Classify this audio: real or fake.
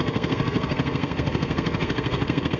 fake